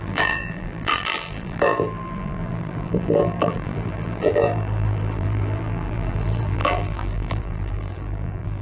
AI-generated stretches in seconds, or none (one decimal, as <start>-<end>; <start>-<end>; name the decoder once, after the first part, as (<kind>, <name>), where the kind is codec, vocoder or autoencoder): 0.0-8.6 (vocoder, BigVGAN v2)